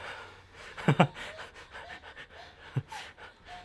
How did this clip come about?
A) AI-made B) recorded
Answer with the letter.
B